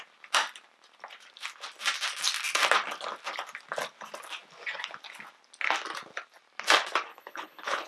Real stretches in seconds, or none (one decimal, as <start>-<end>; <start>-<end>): 0.0-7.1